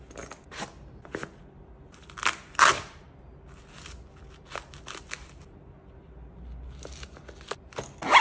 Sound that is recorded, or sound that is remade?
recorded